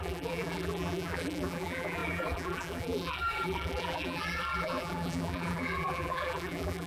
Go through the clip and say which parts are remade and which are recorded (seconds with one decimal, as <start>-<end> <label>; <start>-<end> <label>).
0.0-6.9 remade